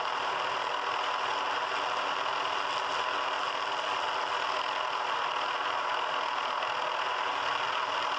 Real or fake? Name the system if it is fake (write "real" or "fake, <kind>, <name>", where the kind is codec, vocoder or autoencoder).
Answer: real